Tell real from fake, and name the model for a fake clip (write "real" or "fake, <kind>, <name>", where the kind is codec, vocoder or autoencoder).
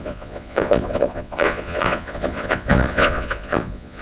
fake, vocoder, Vocos